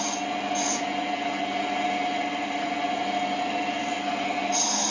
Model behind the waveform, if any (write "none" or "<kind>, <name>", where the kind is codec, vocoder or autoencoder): none